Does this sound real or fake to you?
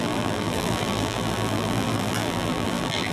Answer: fake